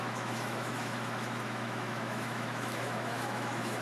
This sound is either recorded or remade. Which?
remade